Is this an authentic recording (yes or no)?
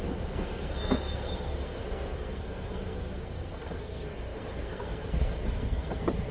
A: no